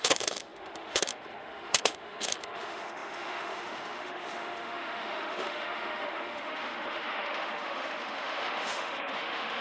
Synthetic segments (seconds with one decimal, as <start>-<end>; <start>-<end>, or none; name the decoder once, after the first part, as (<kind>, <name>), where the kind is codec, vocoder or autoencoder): 0.0-9.6 (autoencoder, DAC-VAE)